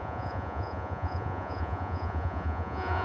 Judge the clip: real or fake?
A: fake